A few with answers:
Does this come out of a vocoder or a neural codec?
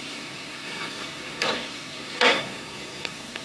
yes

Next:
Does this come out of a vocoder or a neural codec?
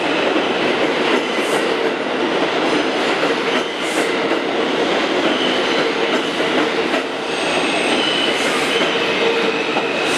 no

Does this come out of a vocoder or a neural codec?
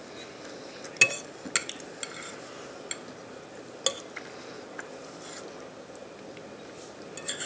no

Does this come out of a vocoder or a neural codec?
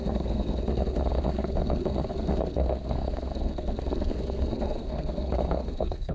yes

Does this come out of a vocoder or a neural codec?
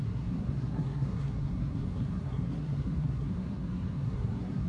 yes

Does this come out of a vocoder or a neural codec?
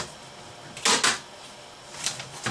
no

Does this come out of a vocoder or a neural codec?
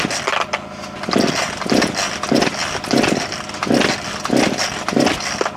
no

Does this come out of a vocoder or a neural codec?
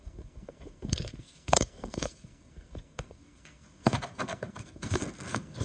yes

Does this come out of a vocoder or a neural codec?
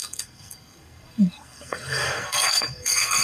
yes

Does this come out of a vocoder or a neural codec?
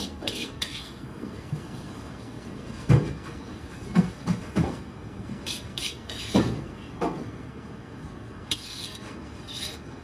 yes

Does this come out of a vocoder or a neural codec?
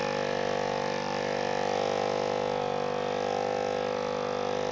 no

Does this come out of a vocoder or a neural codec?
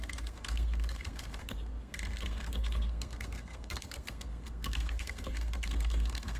yes